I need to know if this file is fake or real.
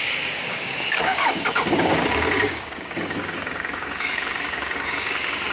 fake